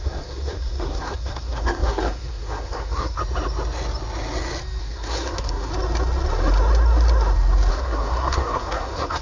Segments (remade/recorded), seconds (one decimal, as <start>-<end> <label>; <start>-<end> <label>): 0.0-3.2 remade; 3.2-4.8 recorded; 4.8-5.7 remade; 5.7-7.7 recorded; 7.7-9.2 remade